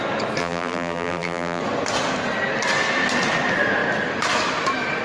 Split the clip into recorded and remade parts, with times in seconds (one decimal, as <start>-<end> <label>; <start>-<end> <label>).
0.0-0.4 recorded; 0.4-1.6 remade; 1.6-5.0 recorded